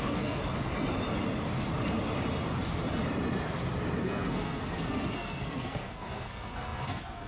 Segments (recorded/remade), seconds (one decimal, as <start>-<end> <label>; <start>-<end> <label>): 0.0-0.4 remade; 0.4-4.0 recorded; 4.0-7.3 remade